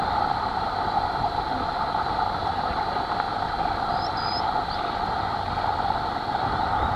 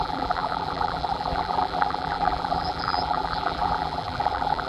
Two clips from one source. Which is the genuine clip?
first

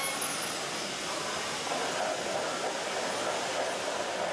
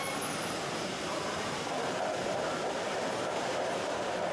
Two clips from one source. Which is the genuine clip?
first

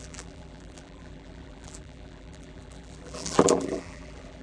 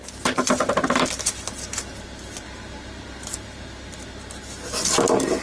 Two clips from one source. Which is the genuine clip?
second